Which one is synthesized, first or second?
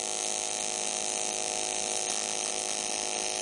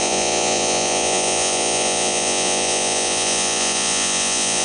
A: second